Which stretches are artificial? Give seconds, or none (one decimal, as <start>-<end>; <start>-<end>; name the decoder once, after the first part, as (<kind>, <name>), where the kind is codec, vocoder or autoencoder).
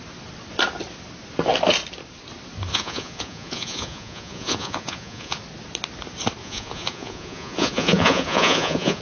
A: 2.7-5.4 (vocoder, Vocos); 6.4-9.0